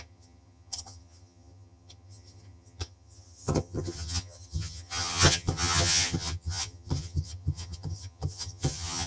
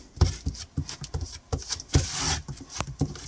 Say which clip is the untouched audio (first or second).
second